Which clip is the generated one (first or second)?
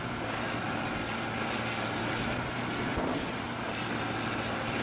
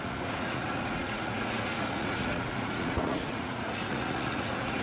second